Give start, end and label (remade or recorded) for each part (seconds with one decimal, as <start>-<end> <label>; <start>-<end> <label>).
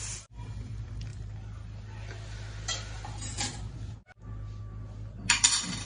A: 0.0-5.9 recorded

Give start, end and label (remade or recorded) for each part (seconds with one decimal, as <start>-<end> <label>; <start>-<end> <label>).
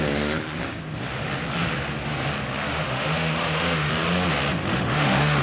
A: 0.0-2.7 recorded; 2.7-3.9 remade; 3.9-4.7 recorded; 4.7-5.4 remade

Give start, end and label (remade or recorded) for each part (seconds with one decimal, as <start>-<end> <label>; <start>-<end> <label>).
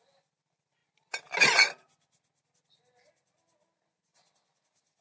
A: 0.0-5.0 recorded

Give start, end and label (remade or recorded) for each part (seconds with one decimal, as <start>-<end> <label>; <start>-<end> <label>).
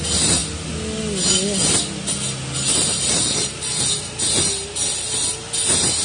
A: 0.0-2.9 recorded; 2.9-3.8 remade; 3.8-6.0 recorded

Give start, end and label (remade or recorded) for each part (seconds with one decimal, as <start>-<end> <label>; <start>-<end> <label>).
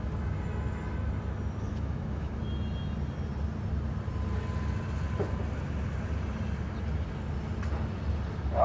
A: 0.0-1.7 recorded; 1.7-2.4 remade; 2.4-8.6 recorded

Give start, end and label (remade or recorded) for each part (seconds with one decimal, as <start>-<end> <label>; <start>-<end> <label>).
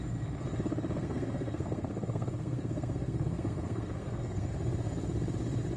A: 0.0-1.0 recorded; 1.0-4.5 remade; 4.5-5.8 recorded